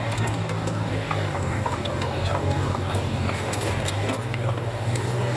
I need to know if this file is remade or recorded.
remade